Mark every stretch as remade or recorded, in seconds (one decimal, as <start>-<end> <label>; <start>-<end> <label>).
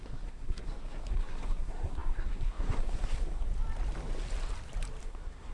0.0-3.5 remade; 3.5-5.0 recorded; 5.0-5.5 remade